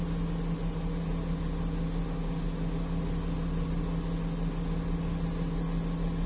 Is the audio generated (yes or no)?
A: no